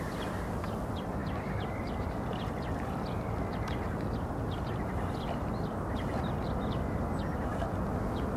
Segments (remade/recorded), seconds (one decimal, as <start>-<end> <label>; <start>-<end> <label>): 0.0-1.2 recorded; 1.2-6.2 remade; 6.2-8.4 recorded